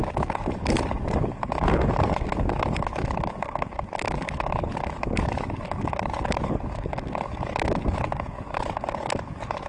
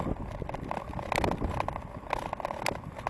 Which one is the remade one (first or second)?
first